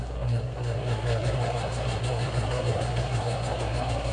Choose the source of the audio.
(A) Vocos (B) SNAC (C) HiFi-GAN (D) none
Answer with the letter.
B